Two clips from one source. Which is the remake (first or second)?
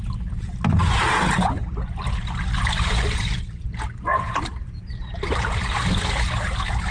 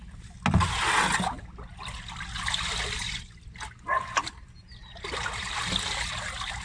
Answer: first